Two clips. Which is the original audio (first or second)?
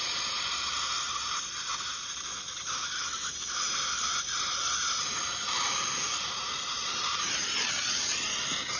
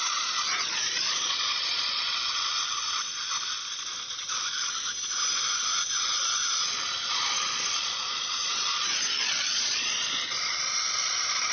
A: first